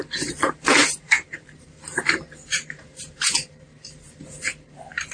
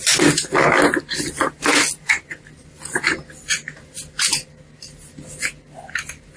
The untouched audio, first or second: second